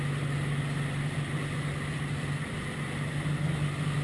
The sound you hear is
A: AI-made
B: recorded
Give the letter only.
B